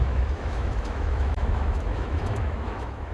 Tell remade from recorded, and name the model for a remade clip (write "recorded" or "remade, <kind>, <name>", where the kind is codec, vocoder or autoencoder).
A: remade, autoencoder, DAC-VAE